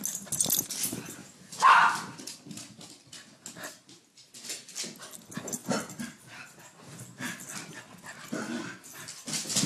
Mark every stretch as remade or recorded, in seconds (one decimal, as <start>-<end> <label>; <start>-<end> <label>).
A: 0.0-9.7 recorded